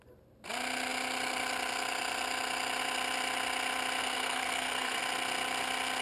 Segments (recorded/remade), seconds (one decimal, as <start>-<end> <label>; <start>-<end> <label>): 0.0-4.0 recorded; 4.0-5.0 remade; 5.0-6.0 recorded

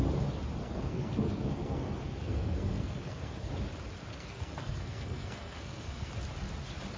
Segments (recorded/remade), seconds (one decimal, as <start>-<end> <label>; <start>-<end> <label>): 0.0-0.6 recorded; 0.6-3.5 remade; 3.5-4.1 recorded; 4.1-6.1 remade; 6.1-7.0 recorded

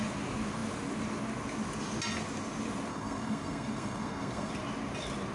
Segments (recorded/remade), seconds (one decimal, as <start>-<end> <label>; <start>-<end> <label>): 0.0-2.9 recorded; 2.9-4.5 remade; 4.5-5.3 recorded

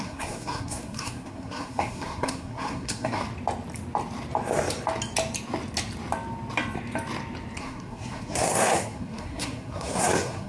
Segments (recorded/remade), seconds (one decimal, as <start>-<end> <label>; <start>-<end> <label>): 0.0-3.2 remade; 3.2-7.6 recorded; 7.6-10.5 remade

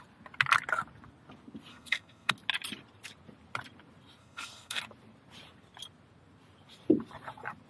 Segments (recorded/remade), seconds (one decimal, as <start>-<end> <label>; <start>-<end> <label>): 0.0-1.7 recorded; 1.7-2.3 remade; 2.3-4.2 recorded; 4.2-4.8 remade; 4.8-7.7 recorded

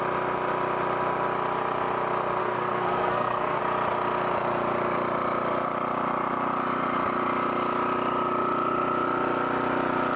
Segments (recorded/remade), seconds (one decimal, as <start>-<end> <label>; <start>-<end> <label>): 0.0-2.4 recorded; 2.4-3.6 remade; 3.6-10.2 recorded